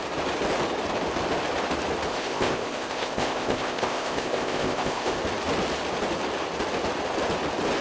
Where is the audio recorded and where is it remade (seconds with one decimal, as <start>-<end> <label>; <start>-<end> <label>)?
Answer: 0.0-2.1 recorded; 2.1-5.2 remade; 5.2-7.8 recorded